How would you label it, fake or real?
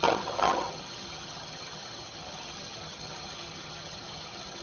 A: fake